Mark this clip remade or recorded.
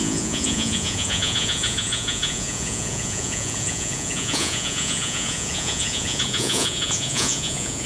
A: remade